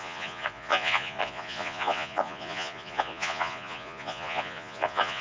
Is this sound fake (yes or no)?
yes